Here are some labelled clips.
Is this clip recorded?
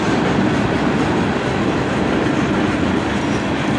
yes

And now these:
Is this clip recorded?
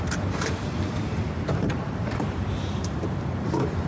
no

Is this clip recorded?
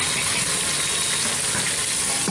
yes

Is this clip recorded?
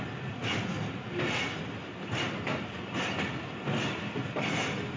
yes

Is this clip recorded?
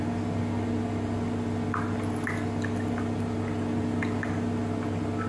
yes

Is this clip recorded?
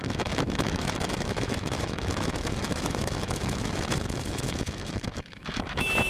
no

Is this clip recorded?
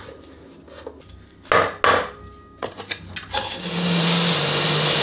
yes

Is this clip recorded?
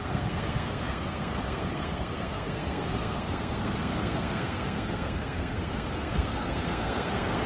no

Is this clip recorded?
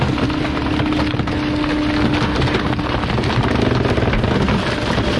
yes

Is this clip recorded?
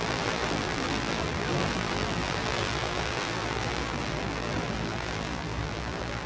no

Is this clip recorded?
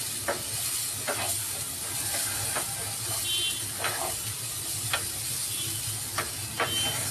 yes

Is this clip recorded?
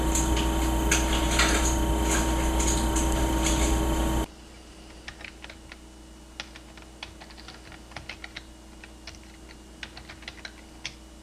yes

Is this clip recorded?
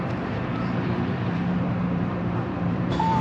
no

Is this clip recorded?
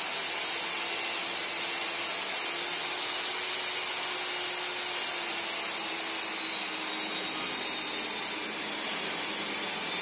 yes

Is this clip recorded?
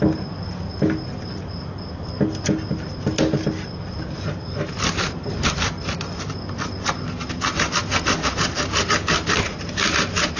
yes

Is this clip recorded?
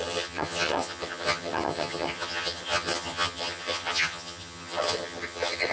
no